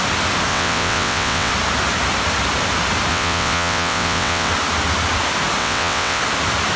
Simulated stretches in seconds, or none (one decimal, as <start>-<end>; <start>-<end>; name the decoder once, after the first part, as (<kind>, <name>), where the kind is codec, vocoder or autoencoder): 0.5-1.5 (vocoder, WaveNeXt); 3.1-4.5; 5.6-6.2